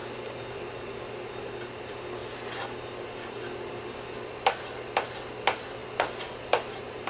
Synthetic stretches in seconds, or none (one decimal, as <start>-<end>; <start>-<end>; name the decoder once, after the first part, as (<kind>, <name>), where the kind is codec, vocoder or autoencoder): none